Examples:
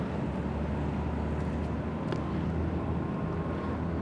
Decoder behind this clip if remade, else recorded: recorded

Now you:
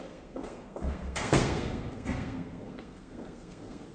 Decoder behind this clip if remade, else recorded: remade, codec, SNAC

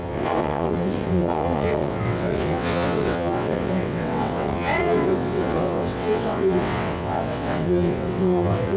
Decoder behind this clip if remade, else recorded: remade, vocoder, WaveNeXt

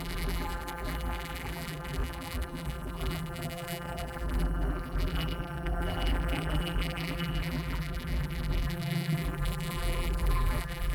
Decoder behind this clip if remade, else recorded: remade, vocoder, BigVGAN v2